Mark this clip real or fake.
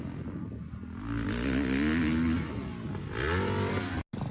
real